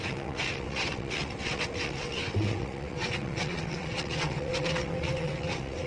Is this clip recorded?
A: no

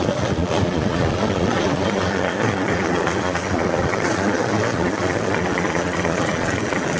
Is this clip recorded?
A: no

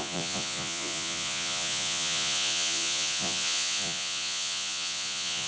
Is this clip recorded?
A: no